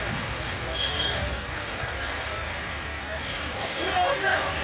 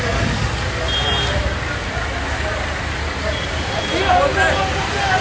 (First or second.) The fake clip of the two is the first